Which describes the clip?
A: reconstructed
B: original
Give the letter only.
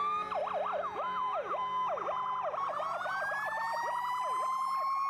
B